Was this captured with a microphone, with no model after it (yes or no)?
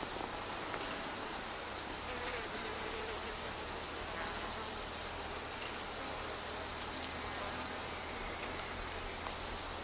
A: yes